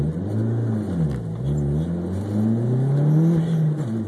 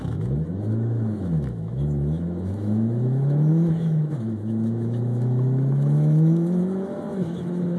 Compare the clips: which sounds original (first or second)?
first